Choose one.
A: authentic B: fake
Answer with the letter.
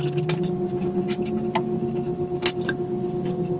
A